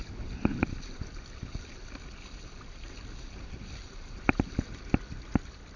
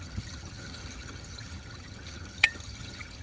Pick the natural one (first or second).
first